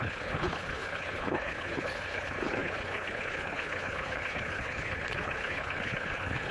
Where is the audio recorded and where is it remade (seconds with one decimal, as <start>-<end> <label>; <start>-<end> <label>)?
0.0-6.5 remade